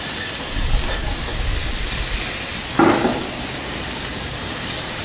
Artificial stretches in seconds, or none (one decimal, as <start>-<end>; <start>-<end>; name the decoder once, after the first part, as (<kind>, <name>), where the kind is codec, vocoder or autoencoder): none